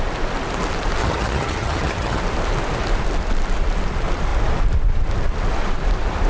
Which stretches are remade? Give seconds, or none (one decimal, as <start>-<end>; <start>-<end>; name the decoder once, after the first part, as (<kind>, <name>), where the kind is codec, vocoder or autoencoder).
1.0-2.2 (vocoder, HiFi-GAN)